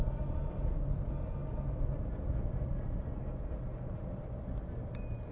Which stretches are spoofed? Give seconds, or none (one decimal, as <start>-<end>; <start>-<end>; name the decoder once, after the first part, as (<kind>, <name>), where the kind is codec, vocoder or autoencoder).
none